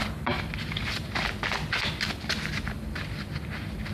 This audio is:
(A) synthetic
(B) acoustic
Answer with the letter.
B